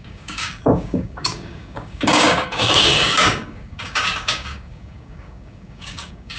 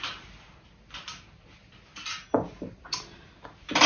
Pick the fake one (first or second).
first